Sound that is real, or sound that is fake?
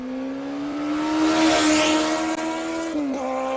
real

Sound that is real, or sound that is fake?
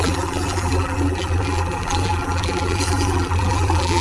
fake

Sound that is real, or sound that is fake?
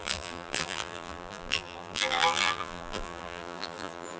fake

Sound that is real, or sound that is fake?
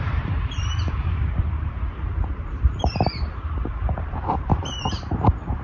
fake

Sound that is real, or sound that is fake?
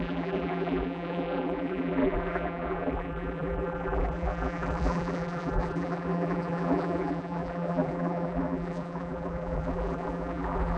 fake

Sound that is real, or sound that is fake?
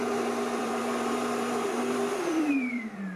fake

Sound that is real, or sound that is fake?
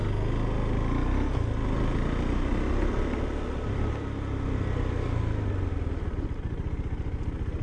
real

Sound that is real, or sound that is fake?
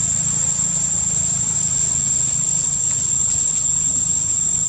real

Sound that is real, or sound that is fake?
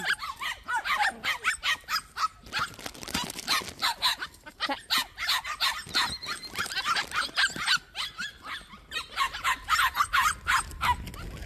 real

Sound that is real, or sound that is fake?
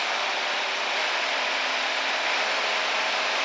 fake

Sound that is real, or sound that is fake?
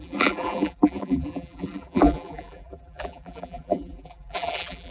fake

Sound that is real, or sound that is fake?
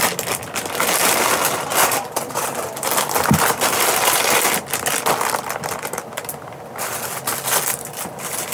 real